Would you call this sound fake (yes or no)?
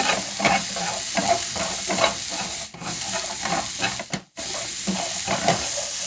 no